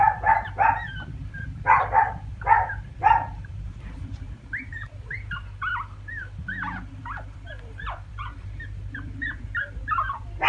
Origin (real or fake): fake